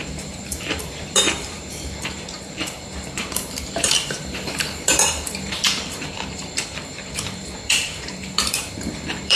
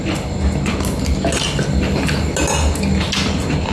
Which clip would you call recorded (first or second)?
second